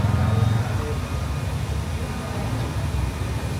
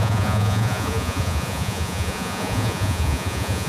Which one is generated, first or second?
second